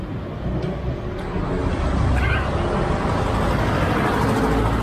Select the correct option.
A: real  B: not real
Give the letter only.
A